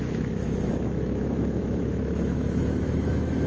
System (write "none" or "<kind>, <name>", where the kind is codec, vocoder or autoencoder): autoencoder, DAC-VAE